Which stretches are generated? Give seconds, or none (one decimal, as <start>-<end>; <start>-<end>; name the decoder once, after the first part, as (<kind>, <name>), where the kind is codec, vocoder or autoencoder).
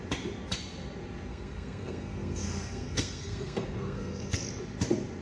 1.3-4.4 (codec, SNAC)